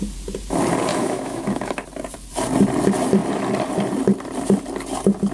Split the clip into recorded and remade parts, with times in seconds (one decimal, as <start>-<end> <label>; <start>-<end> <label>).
0.0-0.9 recorded; 0.9-1.8 remade; 1.8-5.3 recorded